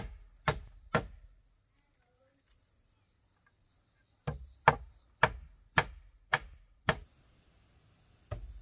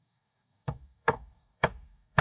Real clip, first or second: first